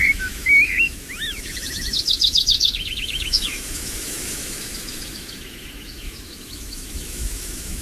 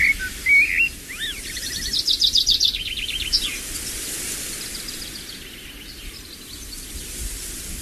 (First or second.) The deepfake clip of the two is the first